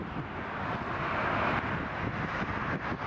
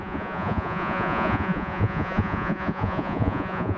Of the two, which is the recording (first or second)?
first